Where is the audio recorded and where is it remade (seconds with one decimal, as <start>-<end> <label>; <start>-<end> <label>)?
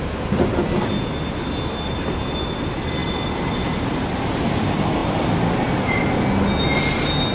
0.0-7.3 recorded